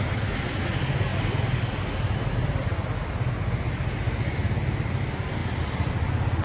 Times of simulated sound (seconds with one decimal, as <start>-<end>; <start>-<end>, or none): none